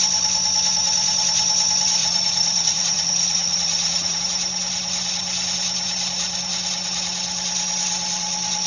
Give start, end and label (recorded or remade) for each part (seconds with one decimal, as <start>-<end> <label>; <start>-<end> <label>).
0.0-2.0 recorded; 2.0-4.2 remade; 4.2-8.7 recorded